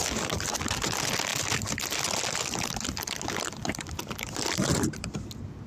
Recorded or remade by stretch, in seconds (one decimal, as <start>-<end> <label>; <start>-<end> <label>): 0.0-5.7 recorded